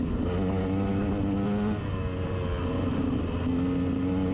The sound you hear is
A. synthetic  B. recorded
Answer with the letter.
B